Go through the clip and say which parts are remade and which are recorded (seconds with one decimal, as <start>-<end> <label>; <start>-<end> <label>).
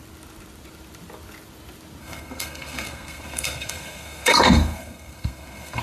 0.0-2.0 recorded; 2.0-5.8 remade